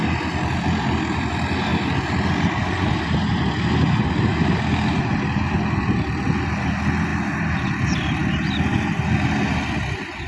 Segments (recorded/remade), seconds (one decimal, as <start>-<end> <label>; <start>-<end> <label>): 0.0-10.3 recorded